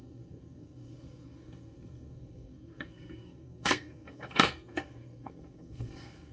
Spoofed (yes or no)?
yes